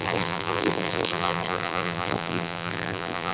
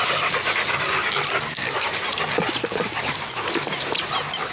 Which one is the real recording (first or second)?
second